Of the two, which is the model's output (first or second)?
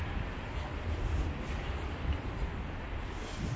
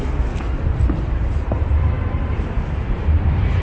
second